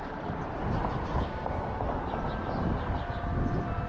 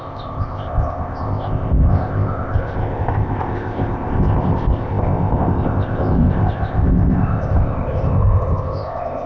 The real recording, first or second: first